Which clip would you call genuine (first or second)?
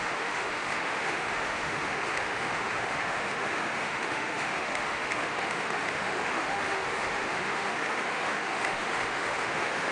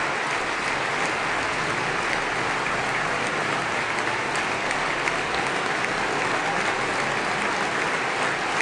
second